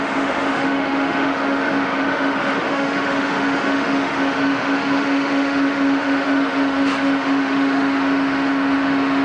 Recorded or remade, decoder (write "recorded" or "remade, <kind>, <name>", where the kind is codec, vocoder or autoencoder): remade, autoencoder, DAC-VAE